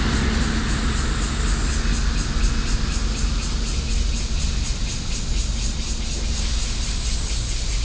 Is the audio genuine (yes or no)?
yes